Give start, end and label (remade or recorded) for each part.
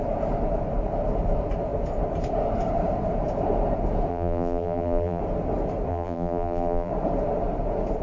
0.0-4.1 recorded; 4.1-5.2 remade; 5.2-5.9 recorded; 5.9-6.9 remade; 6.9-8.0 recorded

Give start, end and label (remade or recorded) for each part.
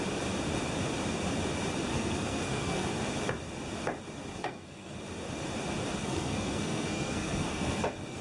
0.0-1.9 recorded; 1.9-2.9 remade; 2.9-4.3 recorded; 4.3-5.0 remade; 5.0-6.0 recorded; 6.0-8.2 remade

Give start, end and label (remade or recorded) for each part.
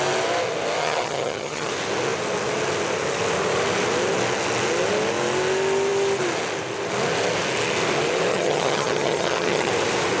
0.0-0.8 recorded; 0.8-1.7 remade; 1.7-8.3 recorded; 8.3-9.7 remade; 9.7-10.2 recorded